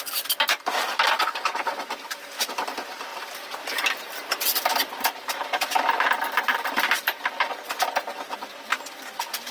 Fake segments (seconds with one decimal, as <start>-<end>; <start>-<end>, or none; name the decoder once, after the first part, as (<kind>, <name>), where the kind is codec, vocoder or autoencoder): 3.1-7.6 (vocoder, BigVGAN v2)